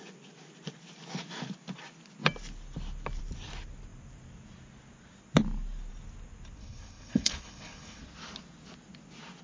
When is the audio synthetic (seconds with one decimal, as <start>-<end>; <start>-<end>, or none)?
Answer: 6.6-8.0